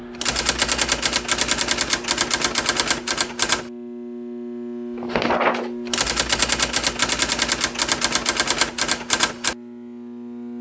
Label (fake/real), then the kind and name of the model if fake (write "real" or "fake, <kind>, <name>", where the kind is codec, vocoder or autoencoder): real